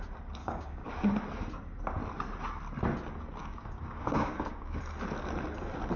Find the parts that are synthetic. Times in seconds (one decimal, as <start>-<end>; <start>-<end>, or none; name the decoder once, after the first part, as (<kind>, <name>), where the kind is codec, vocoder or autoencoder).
0.4-0.9 (codec, DAC); 3.4-4.8